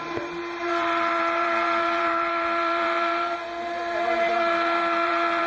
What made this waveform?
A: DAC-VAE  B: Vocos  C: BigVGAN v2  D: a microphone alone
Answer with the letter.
C